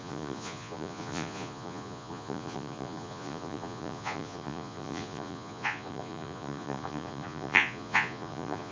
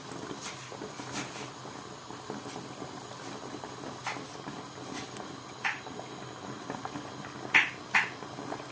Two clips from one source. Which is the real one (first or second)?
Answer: second